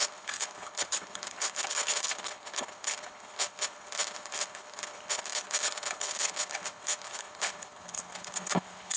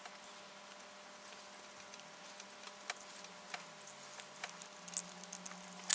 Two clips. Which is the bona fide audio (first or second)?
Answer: second